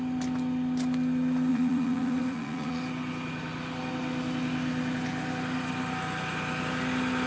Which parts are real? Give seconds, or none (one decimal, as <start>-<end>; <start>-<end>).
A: 0.0-1.5; 2.8-7.3